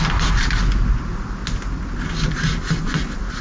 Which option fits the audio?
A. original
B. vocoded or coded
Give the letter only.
A